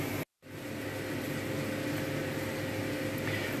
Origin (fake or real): real